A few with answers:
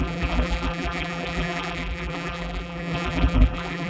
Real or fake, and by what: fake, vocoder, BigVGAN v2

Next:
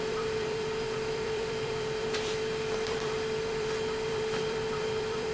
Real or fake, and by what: fake, vocoder, BigVGAN v2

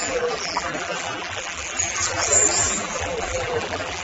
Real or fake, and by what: fake, vocoder, BigVGAN v2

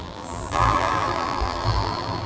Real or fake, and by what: fake, vocoder, BigVGAN v2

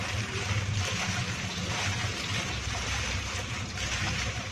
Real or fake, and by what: fake, vocoder, BigVGAN v2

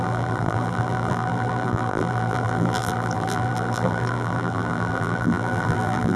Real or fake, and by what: fake, vocoder, BigVGAN v2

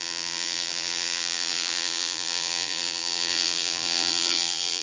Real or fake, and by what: fake, vocoder, BigVGAN v2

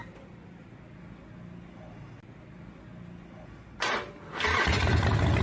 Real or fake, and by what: real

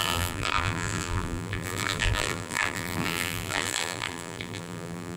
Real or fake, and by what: fake, vocoder, BigVGAN v2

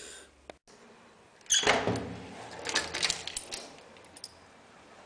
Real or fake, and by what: real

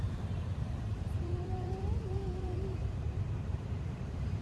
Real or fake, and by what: fake, vocoder, BigVGAN v2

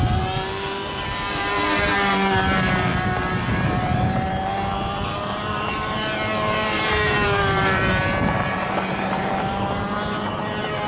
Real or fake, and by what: fake, vocoder, BigVGAN v2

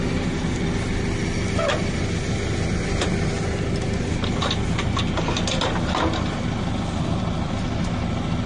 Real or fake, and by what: real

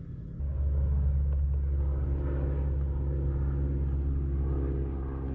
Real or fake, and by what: real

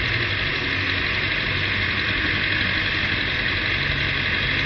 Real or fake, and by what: real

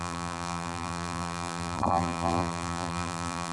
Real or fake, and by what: fake, vocoder, BigVGAN v2